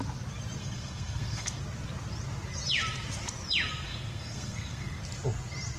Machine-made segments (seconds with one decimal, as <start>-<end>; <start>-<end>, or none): 0.6-1.6; 3.9-5.0